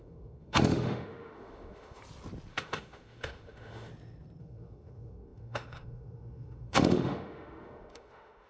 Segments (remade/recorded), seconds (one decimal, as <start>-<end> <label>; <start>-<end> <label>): 0.0-2.0 remade; 2.0-2.5 recorded; 2.5-3.9 remade; 3.9-4.4 recorded; 4.4-8.5 remade